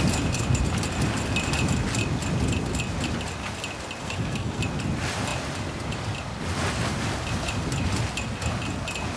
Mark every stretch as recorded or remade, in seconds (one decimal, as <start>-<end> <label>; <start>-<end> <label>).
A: 0.0-4.0 recorded; 4.0-4.6 remade; 4.6-9.2 recorded